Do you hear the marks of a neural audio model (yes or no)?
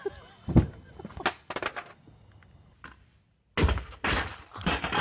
no